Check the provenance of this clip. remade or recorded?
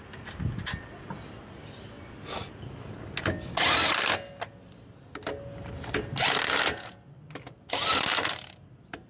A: recorded